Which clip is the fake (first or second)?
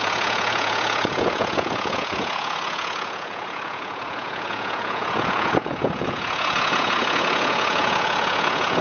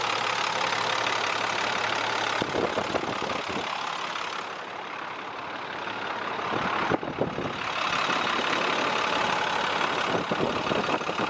first